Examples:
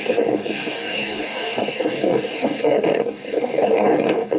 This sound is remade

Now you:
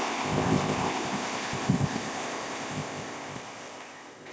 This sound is remade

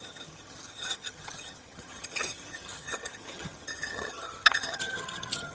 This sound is remade